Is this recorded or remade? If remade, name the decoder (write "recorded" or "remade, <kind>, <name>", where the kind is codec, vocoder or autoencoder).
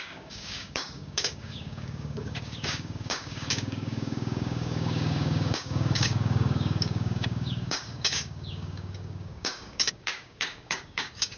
remade, codec, DAC